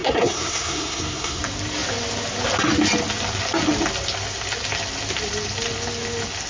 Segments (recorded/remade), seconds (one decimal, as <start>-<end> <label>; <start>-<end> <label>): 0.0-1.4 remade; 1.4-6.5 recorded